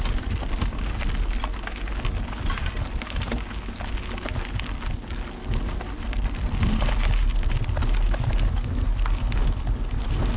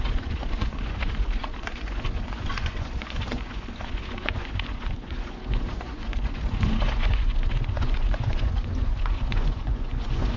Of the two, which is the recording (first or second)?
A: first